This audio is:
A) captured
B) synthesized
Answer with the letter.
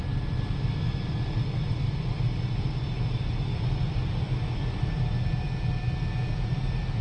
A